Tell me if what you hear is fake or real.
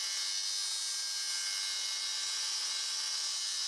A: real